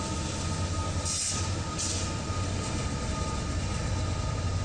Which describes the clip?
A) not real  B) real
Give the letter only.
B